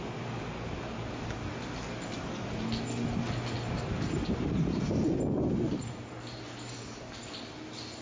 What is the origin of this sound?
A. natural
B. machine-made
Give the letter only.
A